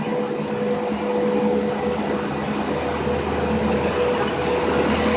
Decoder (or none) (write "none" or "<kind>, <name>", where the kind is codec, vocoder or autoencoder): none